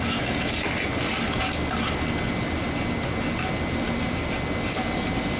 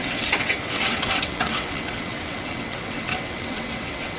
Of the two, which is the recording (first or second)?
first